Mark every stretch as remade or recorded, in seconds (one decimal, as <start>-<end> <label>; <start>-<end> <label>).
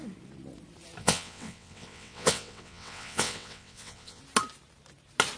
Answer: 0.0-1.0 recorded; 1.0-4.2 remade; 4.2-5.4 recorded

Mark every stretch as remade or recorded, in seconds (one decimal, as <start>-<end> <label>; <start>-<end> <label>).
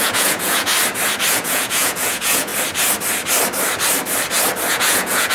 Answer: 0.0-0.7 remade; 0.7-1.3 recorded; 1.3-2.5 remade; 2.5-4.7 recorded; 4.7-5.3 remade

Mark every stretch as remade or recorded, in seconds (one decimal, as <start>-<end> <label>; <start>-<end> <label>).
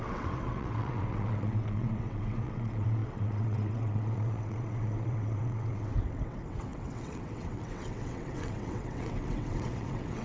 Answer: 0.0-10.2 remade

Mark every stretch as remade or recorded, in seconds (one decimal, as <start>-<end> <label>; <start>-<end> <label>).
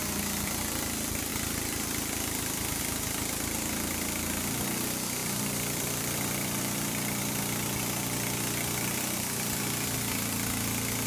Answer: 0.0-0.6 remade; 0.6-5.2 recorded; 5.2-7.4 remade; 7.4-11.1 recorded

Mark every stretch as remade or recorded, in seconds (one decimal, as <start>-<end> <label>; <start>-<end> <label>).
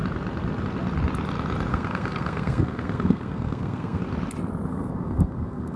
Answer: 0.0-1.7 recorded; 1.7-4.0 remade; 4.0-4.7 recorded; 4.7-5.8 remade